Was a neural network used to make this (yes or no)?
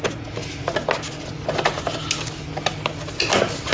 no